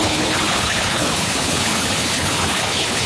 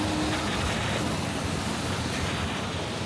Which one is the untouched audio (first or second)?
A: second